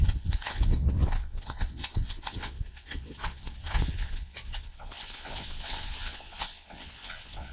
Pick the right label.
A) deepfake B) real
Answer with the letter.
A